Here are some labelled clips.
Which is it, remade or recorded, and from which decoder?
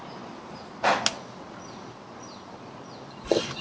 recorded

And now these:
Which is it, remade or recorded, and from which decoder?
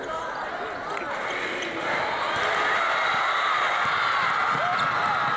recorded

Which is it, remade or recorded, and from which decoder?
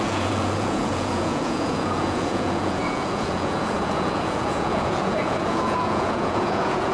remade, vocoder, Vocos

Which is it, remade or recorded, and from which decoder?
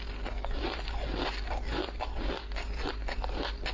recorded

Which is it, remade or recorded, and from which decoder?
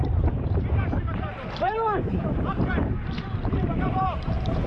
remade, vocoder, BigVGAN v2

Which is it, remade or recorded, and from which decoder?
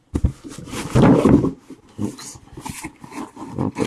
recorded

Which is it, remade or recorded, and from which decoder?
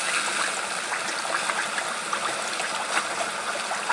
recorded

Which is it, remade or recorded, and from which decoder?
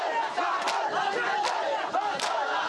recorded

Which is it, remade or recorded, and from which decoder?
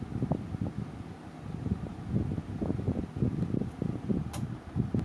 recorded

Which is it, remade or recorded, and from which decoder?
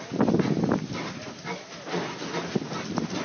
recorded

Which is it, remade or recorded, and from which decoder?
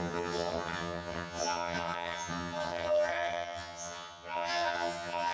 remade, vocoder, HiFi-GAN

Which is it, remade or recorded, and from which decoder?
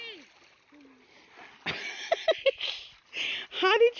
recorded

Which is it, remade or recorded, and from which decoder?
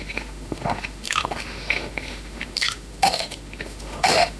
remade, autoencoder, DAC-VAE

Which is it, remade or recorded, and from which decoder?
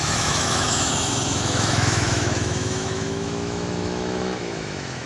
remade, autoencoder, DAC-VAE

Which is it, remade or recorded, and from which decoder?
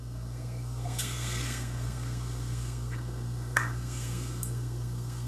remade, codec, SNAC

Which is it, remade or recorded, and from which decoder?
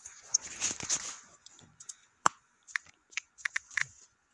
remade, vocoder, Vocos